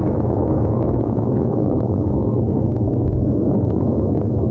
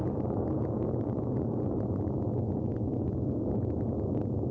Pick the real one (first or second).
second